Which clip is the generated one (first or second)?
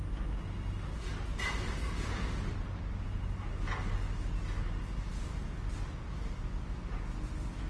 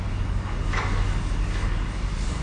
second